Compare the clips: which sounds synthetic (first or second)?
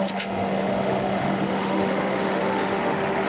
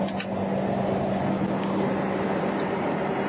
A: first